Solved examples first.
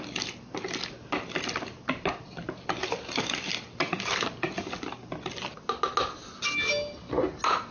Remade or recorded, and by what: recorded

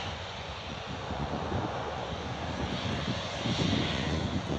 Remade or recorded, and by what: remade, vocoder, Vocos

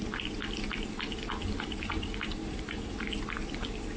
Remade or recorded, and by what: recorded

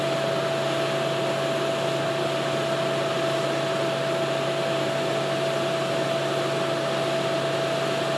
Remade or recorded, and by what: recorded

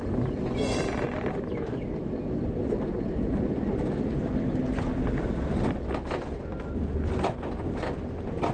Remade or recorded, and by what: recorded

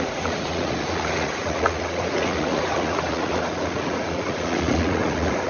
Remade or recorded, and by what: remade, vocoder, Vocos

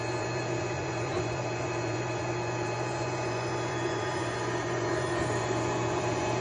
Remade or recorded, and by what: remade, vocoder, Vocos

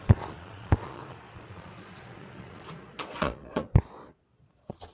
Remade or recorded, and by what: remade, vocoder, Vocos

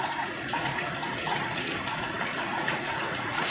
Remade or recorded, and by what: remade, vocoder, Vocos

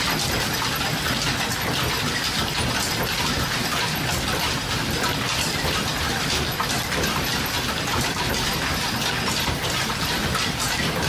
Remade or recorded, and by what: recorded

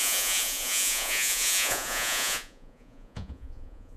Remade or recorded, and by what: remade, vocoder, Vocos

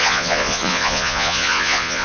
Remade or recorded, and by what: remade, vocoder, Vocos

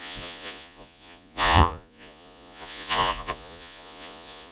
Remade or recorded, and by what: remade, vocoder, Vocos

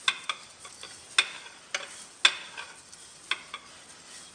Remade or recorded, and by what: recorded